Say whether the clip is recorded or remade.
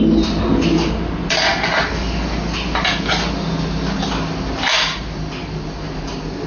recorded